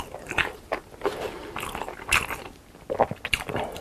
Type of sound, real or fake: real